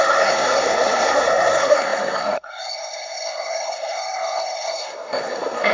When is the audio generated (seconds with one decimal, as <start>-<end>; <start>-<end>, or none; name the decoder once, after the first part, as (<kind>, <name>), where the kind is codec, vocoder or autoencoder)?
0.0-5.7 (codec, SNAC)